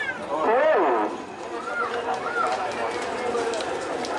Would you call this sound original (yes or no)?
yes